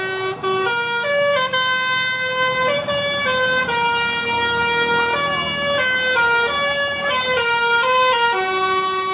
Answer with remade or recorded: recorded